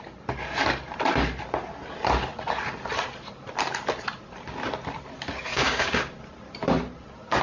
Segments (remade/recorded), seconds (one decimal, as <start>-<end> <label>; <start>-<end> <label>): 0.0-5.5 recorded; 5.5-6.0 remade; 6.0-7.4 recorded

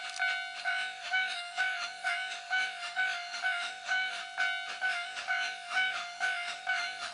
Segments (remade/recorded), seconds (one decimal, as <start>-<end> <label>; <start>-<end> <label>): 0.0-0.6 recorded; 0.6-4.2 remade; 4.2-4.8 recorded; 4.8-7.1 remade

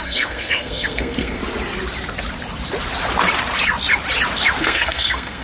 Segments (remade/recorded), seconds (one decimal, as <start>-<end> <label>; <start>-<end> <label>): 0.0-1.4 remade; 1.4-4.6 recorded; 4.6-5.4 remade

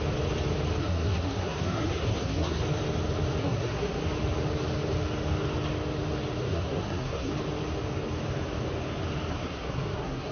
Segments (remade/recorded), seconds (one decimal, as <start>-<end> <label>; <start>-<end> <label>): 0.0-0.8 recorded; 0.8-2.6 remade; 2.6-3.4 recorded; 3.4-4.0 remade; 4.0-6.4 recorded; 6.4-7.3 remade; 7.3-9.3 recorded; 9.3-10.3 remade

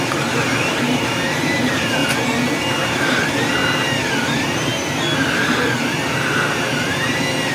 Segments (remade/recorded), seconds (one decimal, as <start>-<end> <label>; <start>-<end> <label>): 0.0-2.0 remade; 2.0-2.7 recorded; 2.7-4.7 remade; 4.7-6.8 recorded; 6.8-7.5 remade